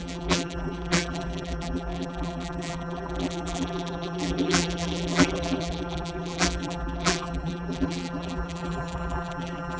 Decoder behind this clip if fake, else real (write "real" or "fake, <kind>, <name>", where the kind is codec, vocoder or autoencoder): fake, vocoder, BigVGAN v2